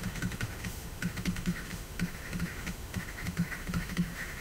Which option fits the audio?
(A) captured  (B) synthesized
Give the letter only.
B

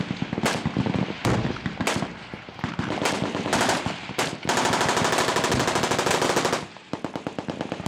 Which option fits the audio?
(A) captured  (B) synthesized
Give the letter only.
A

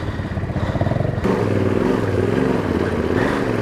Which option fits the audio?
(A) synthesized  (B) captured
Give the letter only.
B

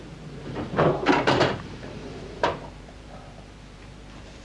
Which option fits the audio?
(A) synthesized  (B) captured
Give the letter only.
A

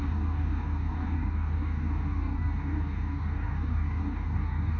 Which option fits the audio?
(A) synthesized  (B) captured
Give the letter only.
A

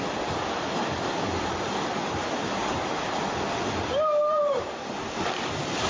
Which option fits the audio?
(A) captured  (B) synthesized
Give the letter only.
A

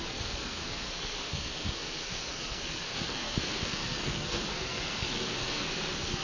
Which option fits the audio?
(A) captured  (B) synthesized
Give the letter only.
B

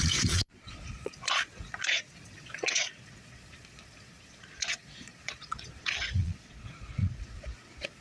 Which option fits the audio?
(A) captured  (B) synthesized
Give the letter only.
B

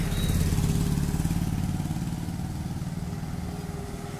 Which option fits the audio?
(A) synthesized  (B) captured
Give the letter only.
B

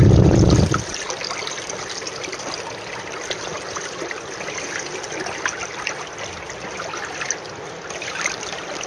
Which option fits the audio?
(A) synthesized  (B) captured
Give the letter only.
B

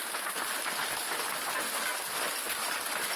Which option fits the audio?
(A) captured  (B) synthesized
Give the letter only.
A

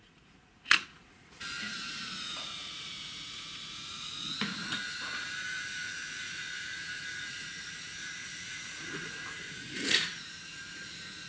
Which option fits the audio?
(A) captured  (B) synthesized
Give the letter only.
B